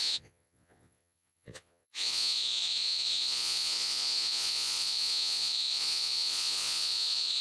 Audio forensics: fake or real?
fake